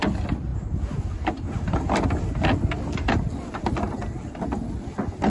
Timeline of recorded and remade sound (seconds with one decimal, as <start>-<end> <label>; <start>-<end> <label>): 0.0-5.3 recorded